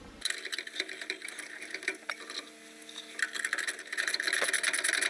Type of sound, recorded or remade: recorded